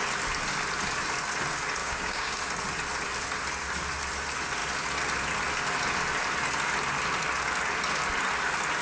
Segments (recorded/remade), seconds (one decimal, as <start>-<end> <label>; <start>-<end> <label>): 0.0-1.8 recorded; 1.8-2.4 remade; 2.4-8.8 recorded